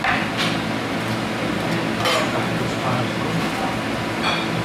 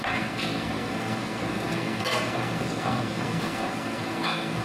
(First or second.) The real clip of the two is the first